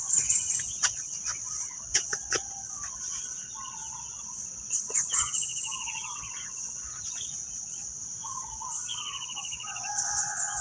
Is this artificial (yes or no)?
yes